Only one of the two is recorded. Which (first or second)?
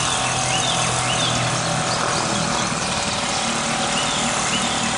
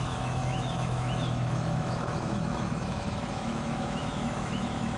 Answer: first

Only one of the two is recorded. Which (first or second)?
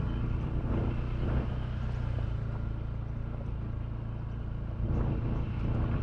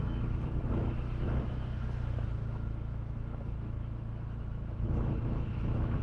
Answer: first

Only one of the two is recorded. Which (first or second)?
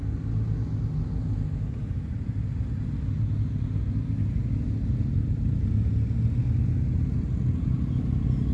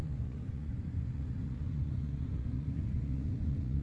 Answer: first